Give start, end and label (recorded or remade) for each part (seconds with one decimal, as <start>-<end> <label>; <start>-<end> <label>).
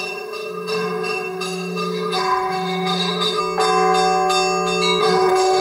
0.0-3.4 remade; 3.4-5.0 recorded; 5.0-5.6 remade